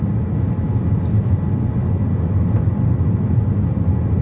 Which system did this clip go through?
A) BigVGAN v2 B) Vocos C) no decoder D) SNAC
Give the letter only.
C